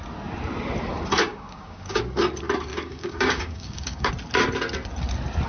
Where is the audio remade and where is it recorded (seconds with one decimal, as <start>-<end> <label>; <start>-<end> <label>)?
0.0-1.3 recorded; 1.3-2.0 remade; 2.0-2.7 recorded; 2.7-4.1 remade; 4.1-5.5 recorded